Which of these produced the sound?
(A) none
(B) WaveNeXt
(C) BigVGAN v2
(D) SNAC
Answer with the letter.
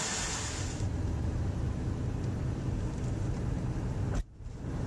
A